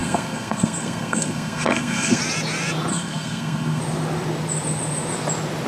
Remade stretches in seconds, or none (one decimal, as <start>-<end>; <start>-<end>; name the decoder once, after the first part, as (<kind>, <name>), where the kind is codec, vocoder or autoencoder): 0.0-2.2 (codec, SNAC); 2.9-3.8

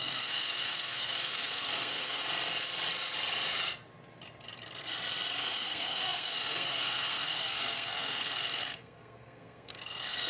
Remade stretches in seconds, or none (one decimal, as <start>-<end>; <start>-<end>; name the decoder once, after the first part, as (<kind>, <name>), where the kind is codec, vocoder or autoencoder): 0.0-2.2 (codec, SNAC); 5.4-10.3